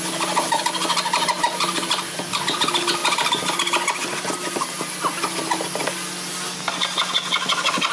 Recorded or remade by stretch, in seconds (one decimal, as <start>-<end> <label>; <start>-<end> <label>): 0.0-7.9 recorded